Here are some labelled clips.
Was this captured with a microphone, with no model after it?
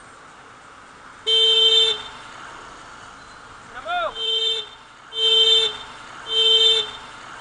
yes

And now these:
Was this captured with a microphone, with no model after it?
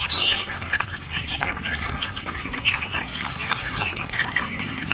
no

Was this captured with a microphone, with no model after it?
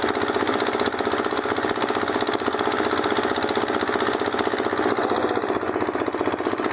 yes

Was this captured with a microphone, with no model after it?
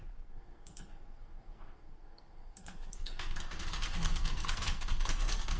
no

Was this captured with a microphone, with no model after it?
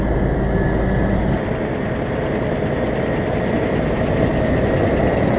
yes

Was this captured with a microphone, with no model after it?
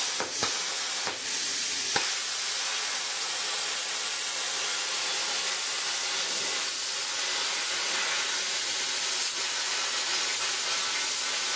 yes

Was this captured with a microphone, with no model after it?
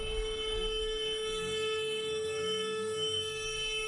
no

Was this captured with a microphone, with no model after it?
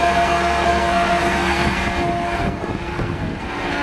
no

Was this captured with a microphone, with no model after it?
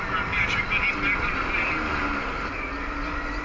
yes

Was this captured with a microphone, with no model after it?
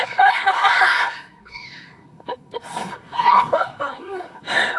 no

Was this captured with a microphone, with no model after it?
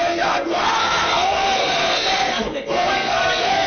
no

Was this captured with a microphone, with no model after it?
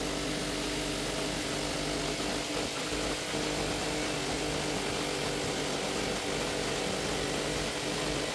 yes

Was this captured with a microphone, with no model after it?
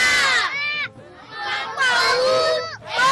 yes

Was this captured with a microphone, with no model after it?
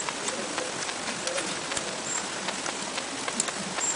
yes